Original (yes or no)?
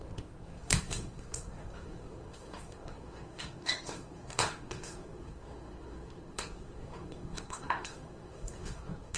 no